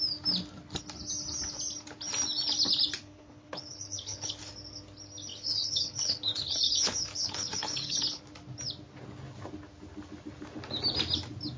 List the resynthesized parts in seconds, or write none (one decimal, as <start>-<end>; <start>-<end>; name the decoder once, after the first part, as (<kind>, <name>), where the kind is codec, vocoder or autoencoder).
3.0-4.5 (codec, HILCodec); 5.3-8.2